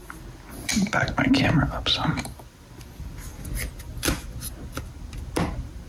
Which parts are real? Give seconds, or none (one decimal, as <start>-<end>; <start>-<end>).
0.0-5.9